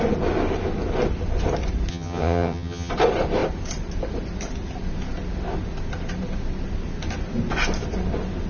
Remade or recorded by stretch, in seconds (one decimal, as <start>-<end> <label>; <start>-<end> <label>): 0.0-1.9 recorded; 1.9-2.9 remade; 2.9-8.5 recorded

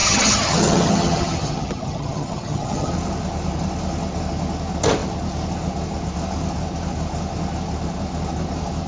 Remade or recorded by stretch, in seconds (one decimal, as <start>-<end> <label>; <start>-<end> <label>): 0.0-2.9 remade; 2.9-8.9 recorded

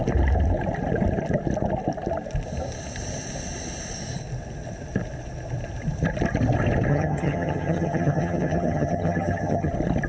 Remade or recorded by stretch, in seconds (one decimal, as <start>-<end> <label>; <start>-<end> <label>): 0.0-6.9 recorded; 6.9-9.7 remade; 9.7-10.1 recorded